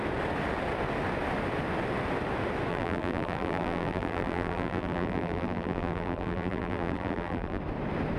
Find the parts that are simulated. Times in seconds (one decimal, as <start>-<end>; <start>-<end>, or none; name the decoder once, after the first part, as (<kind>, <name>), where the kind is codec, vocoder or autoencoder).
2.7-7.6 (vocoder, BigVGAN v2)